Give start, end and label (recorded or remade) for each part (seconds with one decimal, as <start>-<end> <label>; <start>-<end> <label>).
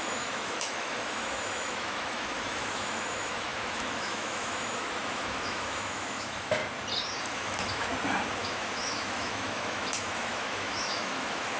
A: 0.0-6.6 remade; 6.6-7.2 recorded; 7.2-7.9 remade; 7.9-8.4 recorded; 8.4-11.6 remade